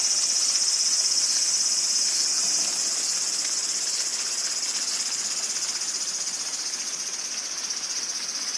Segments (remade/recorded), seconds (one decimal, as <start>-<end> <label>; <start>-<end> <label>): 0.0-8.6 recorded